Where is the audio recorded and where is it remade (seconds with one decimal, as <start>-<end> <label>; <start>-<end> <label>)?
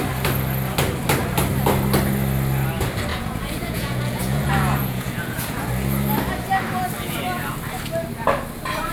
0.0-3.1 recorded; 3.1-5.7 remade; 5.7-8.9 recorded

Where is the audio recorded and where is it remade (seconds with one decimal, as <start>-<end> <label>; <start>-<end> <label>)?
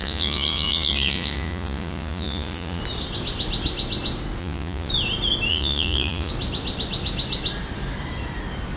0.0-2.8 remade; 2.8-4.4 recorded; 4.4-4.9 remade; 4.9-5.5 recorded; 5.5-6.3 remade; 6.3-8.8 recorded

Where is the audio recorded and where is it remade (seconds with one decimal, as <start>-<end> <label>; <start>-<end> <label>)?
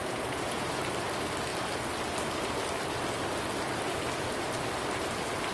0.0-0.8 remade; 0.8-5.5 recorded